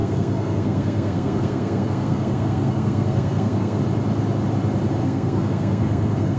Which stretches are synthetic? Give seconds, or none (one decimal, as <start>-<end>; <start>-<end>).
0.0-3.8; 5.0-6.4